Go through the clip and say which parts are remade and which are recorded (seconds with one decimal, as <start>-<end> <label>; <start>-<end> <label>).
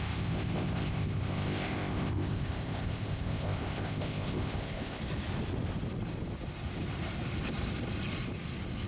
0.0-5.0 remade; 5.0-8.9 recorded